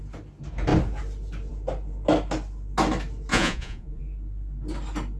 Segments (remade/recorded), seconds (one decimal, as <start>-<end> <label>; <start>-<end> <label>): 0.0-3.3 recorded; 3.3-4.0 remade; 4.0-5.2 recorded

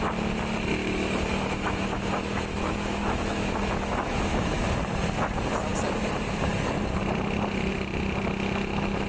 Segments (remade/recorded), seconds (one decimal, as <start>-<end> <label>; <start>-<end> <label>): 0.0-0.7 recorded; 0.7-4.6 remade; 4.6-9.1 recorded

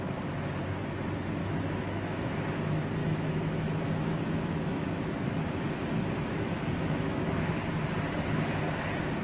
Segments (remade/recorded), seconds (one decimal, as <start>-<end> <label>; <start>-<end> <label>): 0.0-1.4 recorded; 1.4-2.3 remade; 2.3-3.0 recorded; 3.0-7.5 remade; 7.5-9.2 recorded

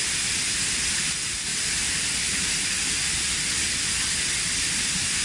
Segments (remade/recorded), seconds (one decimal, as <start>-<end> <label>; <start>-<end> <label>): 0.0-5.2 recorded

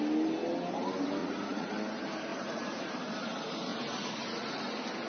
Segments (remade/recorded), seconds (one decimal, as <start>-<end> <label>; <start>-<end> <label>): 0.0-1.2 recorded; 1.2-1.7 remade; 1.7-2.3 recorded; 2.3-2.9 remade; 2.9-3.7 recorded; 3.7-4.6 remade; 4.6-5.1 recorded

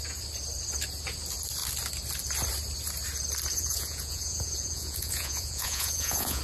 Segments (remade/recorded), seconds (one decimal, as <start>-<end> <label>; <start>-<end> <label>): 0.0-3.5 recorded; 3.5-6.4 remade

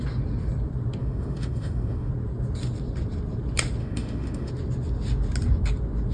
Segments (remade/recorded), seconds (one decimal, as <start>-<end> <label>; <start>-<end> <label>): 0.0-1.0 recorded; 1.0-2.1 remade; 2.1-3.8 recorded; 3.8-4.5 remade; 4.5-6.1 recorded

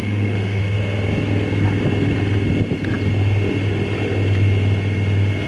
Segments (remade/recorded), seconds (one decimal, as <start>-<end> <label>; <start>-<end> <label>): 0.0-0.6 remade; 0.6-5.5 recorded